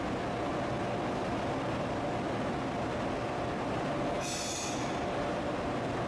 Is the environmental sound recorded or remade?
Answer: recorded